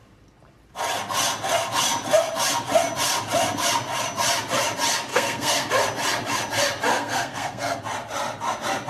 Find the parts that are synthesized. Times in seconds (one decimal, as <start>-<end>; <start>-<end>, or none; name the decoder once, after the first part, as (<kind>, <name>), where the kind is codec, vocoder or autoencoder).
5.1-5.7 (codec, SNAC); 6.9-7.8